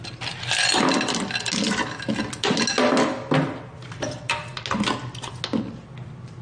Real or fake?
real